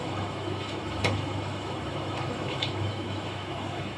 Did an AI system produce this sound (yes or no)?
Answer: yes